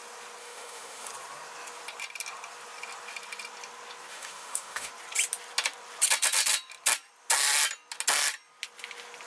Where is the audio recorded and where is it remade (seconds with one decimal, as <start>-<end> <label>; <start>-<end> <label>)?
0.0-0.4 recorded; 0.4-1.1 remade; 1.1-4.1 recorded; 4.1-4.9 remade; 4.9-9.3 recorded